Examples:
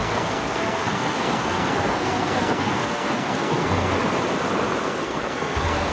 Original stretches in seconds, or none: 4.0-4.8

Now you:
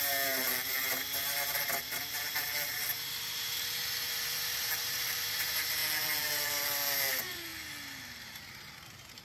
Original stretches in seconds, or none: 7.5-8.0

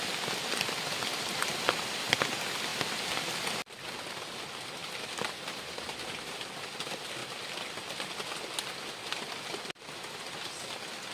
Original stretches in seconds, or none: 0.0-4.8; 6.5-11.1

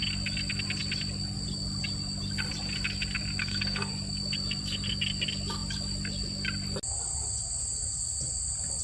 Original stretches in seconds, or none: 0.0-3.4; 3.9-8.8

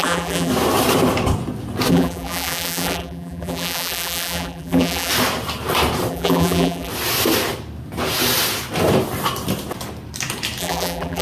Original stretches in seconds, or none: 0.5-1.9; 5.1-6.1; 6.9-10.6

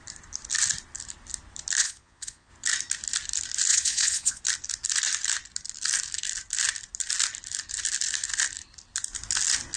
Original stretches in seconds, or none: 0.0-1.8; 2.5-3.7; 4.4-9.8

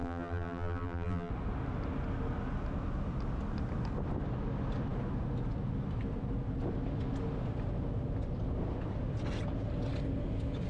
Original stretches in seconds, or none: 1.3-10.7

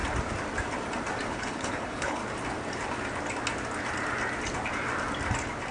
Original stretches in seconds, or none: 0.0-1.3; 2.2-5.7